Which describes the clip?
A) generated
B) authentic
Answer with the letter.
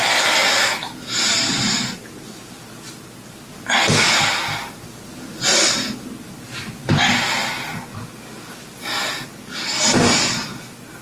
B